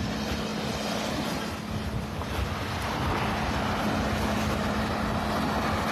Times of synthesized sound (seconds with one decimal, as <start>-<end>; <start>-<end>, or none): none